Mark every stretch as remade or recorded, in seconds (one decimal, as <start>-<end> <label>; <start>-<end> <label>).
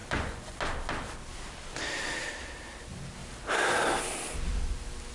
0.0-0.6 remade; 0.6-5.1 recorded